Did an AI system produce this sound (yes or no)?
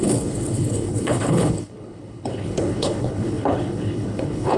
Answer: yes